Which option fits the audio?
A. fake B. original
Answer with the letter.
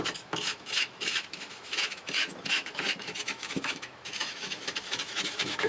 A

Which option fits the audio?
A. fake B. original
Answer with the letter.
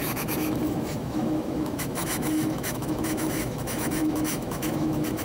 A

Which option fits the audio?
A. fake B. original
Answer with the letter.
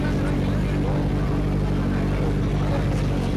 B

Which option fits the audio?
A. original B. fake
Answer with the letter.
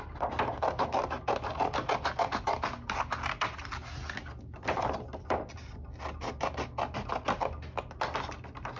A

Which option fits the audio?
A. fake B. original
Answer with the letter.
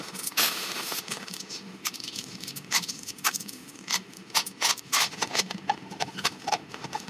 A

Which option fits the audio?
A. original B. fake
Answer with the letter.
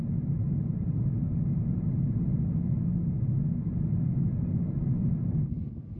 A